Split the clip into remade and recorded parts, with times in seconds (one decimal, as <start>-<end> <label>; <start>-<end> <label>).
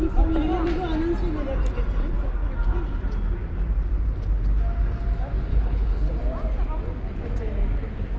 0.0-5.5 recorded; 5.5-6.1 remade; 6.1-8.2 recorded